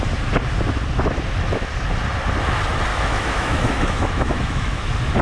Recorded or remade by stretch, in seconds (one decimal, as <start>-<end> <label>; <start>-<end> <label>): 0.0-2.9 recorded; 2.9-4.8 remade; 4.8-5.2 recorded